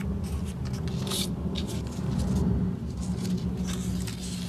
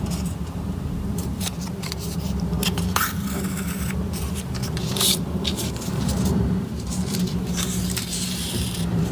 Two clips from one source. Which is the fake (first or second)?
second